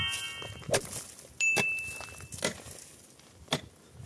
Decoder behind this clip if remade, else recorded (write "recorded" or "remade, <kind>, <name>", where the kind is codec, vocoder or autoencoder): recorded